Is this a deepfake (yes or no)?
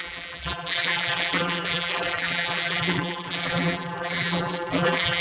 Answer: yes